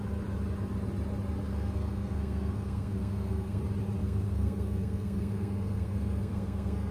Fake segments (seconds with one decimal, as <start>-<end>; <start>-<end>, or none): 1.5-3.6; 4.0-6.9